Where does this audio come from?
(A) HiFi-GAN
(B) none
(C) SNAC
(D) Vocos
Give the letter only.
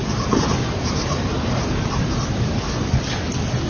B